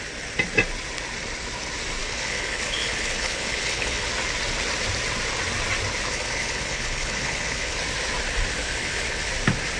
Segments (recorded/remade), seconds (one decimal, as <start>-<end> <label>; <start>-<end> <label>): 0.0-2.0 recorded; 2.0-4.1 remade; 4.1-6.1 recorded; 6.1-7.8 remade; 7.8-8.6 recorded; 8.6-9.3 remade; 9.3-9.8 recorded